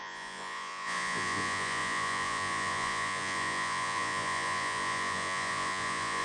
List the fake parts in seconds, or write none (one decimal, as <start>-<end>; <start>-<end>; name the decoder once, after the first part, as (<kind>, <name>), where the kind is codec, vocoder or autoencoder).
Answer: 0.0-6.2 (vocoder, Vocos)